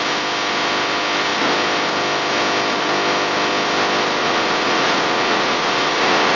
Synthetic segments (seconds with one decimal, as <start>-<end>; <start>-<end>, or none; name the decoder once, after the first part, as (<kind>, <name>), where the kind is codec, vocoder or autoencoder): 4.2-6.4 (vocoder, Vocos)